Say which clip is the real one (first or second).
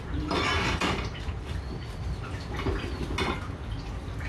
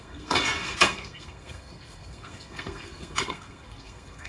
first